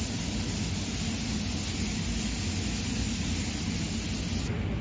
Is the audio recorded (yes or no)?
yes